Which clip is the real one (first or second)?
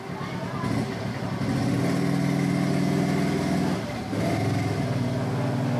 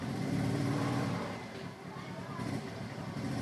first